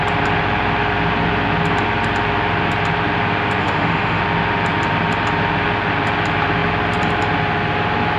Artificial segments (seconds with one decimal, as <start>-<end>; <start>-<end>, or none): 3.6-4.2